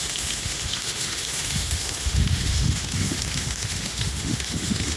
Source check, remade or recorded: remade